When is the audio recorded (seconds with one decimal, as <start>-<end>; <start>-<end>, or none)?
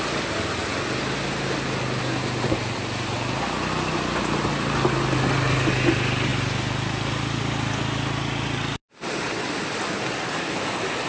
0.0-11.1